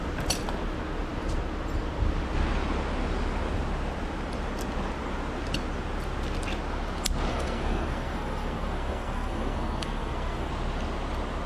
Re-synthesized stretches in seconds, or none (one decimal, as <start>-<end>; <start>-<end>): 7.3-10.5